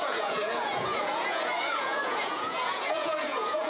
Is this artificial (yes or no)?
yes